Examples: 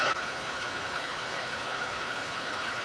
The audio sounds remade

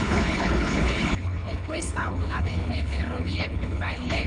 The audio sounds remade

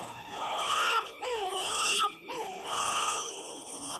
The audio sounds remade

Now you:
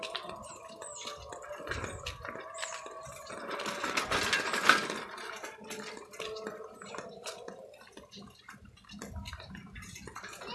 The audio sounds recorded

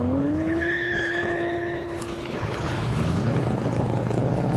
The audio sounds remade